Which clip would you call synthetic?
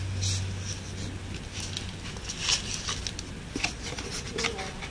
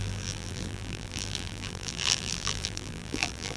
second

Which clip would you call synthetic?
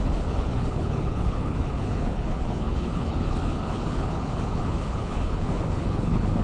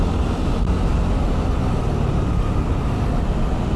first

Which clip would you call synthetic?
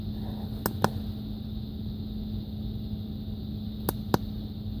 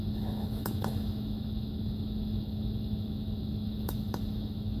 second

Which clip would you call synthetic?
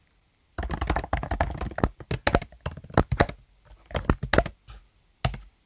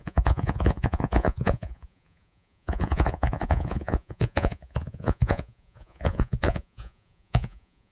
second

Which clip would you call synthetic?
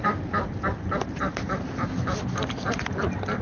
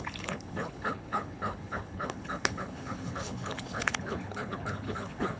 second